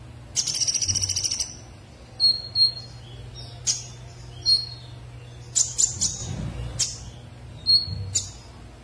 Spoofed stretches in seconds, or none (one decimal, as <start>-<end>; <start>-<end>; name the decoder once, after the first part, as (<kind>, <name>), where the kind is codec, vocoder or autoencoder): none